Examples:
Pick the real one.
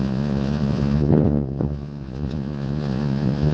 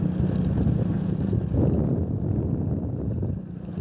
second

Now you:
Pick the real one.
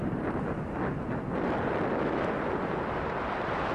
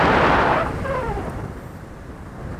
first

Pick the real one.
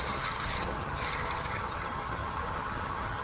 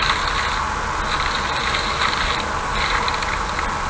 second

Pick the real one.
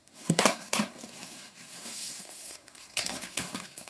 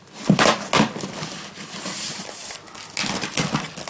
second